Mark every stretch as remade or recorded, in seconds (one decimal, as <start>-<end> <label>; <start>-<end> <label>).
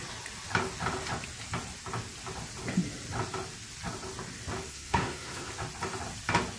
0.0-4.7 recorded; 4.7-5.5 remade; 5.5-6.6 recorded